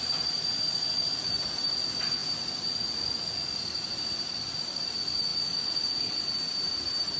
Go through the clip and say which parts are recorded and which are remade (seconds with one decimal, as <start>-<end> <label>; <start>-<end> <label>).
0.0-5.3 recorded; 5.3-6.1 remade; 6.1-7.2 recorded